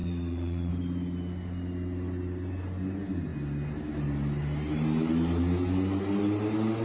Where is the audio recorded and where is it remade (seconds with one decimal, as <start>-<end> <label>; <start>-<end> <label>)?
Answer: 0.0-0.7 remade; 0.7-6.8 recorded